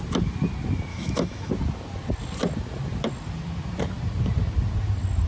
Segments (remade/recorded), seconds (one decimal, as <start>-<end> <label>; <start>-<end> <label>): 0.0-0.9 recorded; 0.9-1.5 remade; 1.5-5.3 recorded